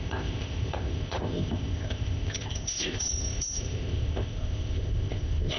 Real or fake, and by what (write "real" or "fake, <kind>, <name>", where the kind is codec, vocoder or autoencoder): fake, codec, ZipCodec